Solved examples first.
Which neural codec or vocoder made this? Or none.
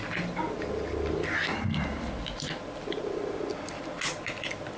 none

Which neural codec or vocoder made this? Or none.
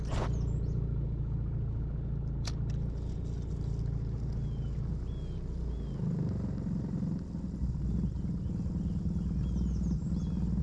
none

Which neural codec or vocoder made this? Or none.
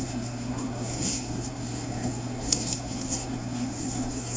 codec, SNAC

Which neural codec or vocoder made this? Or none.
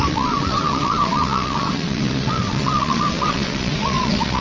vocoder, WaveNeXt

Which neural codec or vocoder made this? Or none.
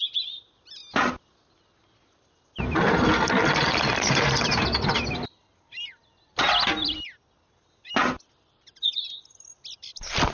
none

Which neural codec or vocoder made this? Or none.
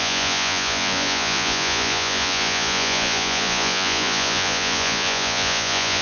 vocoder, Vocos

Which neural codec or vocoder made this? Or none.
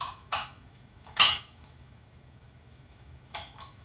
autoencoder, DAC-VAE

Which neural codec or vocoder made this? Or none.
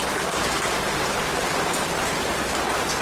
none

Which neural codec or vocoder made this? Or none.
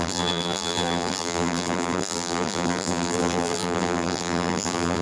vocoder, BigVGAN v2